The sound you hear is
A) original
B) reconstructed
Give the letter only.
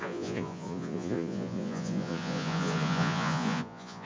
B